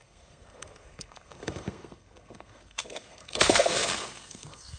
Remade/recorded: remade